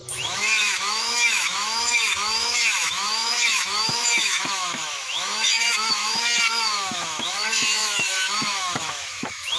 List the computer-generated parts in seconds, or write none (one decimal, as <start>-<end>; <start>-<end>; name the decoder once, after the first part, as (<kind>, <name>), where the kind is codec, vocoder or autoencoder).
0.0-9.6 (autoencoder, DAC-VAE)